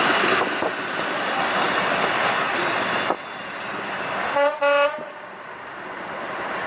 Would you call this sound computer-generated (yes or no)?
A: no